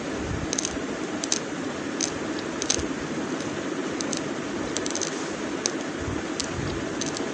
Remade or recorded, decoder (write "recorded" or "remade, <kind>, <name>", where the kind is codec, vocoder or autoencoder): recorded